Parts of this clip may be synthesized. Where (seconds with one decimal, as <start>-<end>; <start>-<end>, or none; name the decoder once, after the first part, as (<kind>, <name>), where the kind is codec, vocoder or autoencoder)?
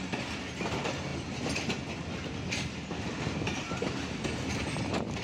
none